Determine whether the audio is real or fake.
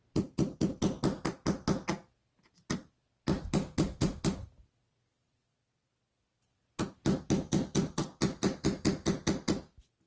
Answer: real